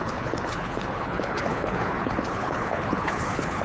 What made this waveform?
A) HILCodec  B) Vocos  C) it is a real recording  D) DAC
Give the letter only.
A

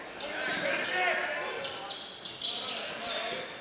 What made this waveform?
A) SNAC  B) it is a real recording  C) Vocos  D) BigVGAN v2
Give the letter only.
B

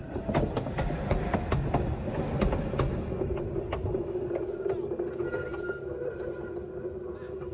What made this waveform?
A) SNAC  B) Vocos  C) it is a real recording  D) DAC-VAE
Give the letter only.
C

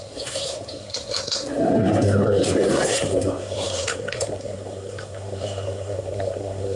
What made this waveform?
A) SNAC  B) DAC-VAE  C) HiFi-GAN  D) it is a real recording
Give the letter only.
A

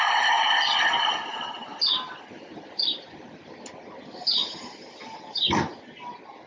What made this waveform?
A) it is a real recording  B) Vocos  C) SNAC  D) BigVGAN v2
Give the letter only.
A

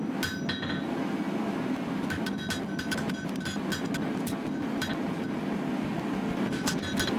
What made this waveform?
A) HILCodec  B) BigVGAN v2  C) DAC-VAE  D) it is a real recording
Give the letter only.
D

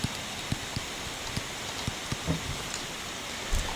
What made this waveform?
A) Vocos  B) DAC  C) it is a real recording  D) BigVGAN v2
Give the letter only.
C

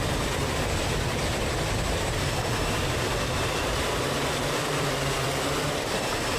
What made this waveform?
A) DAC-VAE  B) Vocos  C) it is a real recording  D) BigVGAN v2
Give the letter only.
D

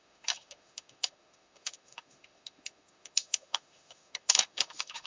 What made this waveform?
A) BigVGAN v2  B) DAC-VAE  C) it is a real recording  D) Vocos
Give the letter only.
B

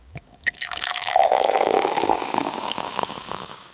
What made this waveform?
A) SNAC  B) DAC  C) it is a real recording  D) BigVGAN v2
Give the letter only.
B